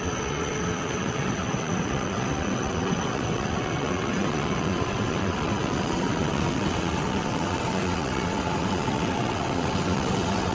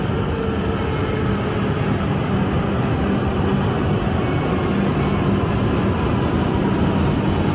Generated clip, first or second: first